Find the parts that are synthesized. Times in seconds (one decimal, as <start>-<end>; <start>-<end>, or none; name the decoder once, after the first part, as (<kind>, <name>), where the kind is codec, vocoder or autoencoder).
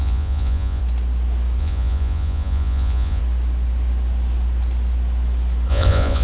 0.0-0.8 (vocoder, Vocos); 1.6-3.2; 5.7-6.2